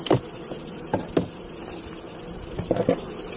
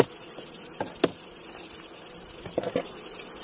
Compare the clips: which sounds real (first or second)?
first